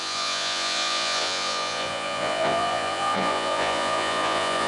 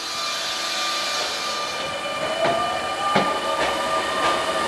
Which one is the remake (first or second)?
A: first